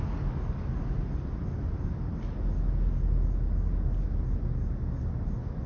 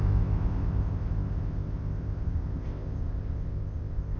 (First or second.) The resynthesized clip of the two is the second